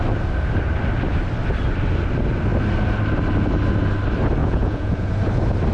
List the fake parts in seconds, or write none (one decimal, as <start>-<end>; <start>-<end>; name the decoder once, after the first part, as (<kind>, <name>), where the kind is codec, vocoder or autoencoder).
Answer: 4.4-5.1 (vocoder, Vocos)